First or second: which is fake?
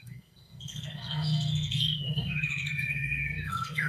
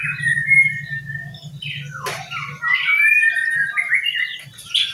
first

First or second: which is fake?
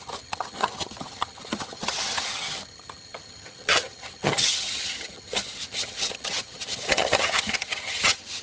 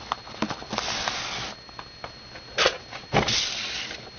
first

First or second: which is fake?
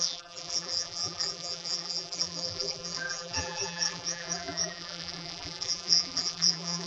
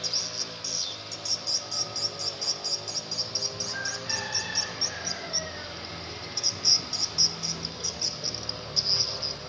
first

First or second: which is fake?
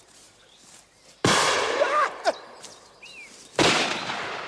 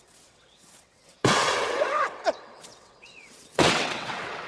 second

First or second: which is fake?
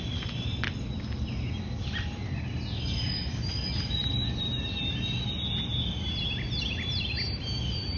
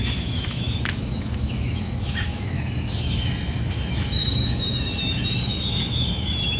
second